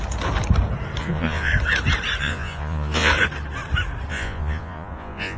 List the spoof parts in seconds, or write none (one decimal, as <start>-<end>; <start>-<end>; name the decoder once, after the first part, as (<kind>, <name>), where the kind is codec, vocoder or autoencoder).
1.0-1.5 (vocoder, Vocos); 2.2-3.1; 4.1-5.4